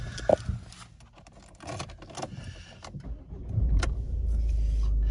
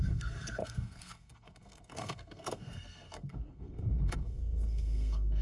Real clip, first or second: first